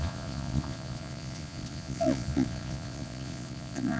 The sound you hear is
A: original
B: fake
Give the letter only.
B